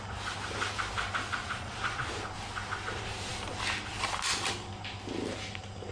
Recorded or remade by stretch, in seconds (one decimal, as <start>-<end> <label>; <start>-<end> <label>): 0.0-1.4 recorded; 1.4-2.1 remade; 2.1-5.9 recorded